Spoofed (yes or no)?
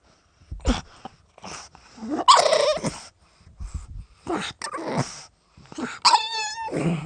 no